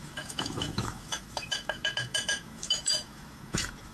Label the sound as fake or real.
fake